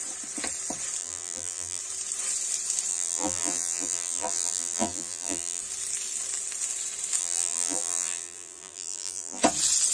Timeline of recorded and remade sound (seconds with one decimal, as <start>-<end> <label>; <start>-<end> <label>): 0.0-1.0 recorded; 1.0-1.8 remade; 1.8-2.9 recorded; 2.9-5.6 remade; 5.6-7.2 recorded; 7.2-9.4 remade; 9.4-9.9 recorded